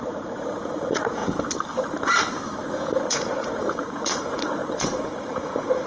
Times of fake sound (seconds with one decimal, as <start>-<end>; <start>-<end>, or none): 0.0-1.2; 3.1-4.6; 5.2-5.9